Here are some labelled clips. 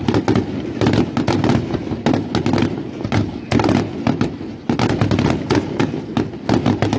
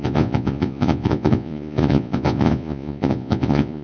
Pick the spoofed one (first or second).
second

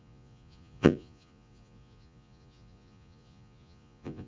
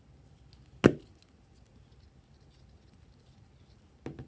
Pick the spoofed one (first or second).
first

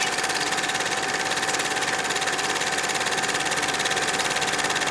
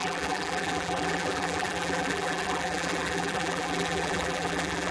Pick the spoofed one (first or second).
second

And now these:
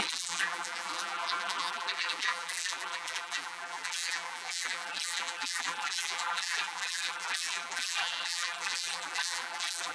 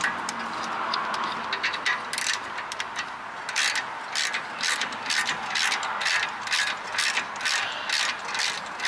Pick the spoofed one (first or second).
first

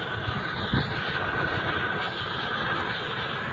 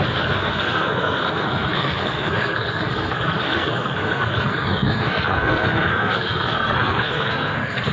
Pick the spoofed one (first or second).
second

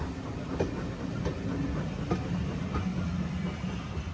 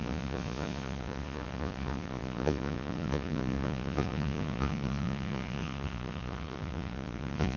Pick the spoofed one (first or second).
second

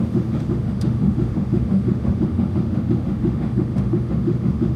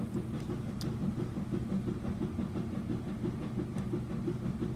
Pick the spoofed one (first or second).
first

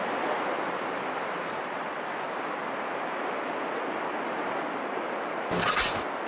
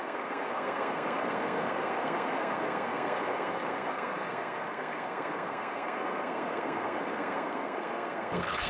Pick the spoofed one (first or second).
second